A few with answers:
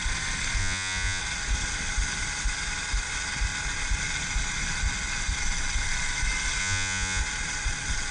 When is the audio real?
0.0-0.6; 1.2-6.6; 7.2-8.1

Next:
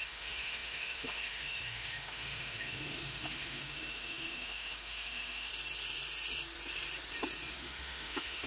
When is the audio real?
5.5-7.5

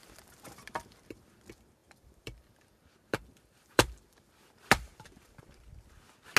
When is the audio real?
1.4-1.8; 5.4-6.4

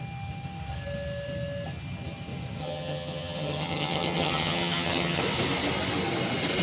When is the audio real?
0.0-2.6; 5.2-6.6

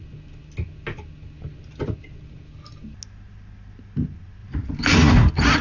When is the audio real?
0.0-4.4; 5.0-5.6